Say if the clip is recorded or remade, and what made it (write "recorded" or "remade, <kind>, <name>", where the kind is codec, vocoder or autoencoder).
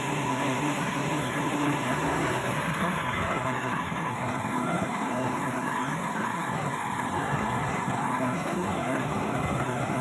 remade, codec, SNAC